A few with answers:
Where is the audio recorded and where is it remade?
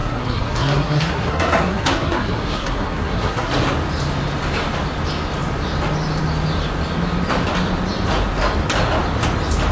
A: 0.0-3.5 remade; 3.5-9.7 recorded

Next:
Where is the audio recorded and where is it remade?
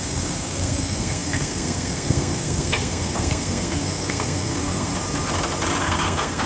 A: 0.0-4.9 remade; 4.9-5.8 recorded; 5.8-6.5 remade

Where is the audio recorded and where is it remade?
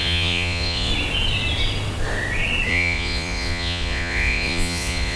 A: 0.0-0.9 remade; 0.9-2.7 recorded; 2.7-5.2 remade